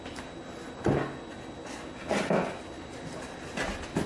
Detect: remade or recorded recorded